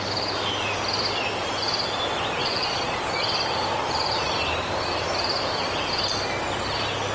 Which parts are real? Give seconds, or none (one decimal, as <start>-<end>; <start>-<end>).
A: 0.0-2.4; 3.0-7.1